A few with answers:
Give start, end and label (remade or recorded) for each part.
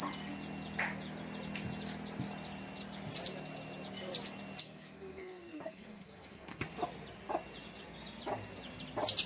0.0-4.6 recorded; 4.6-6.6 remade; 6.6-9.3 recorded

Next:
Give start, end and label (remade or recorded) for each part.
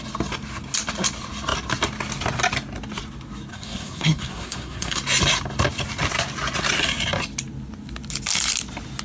0.0-3.5 recorded; 3.5-5.0 remade; 5.0-9.0 recorded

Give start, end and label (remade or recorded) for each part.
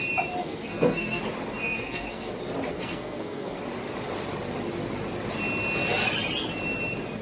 0.0-0.4 recorded; 0.4-1.2 remade; 1.2-1.6 recorded; 1.6-2.3 remade; 2.3-2.7 recorded; 2.7-3.6 remade; 3.6-7.2 recorded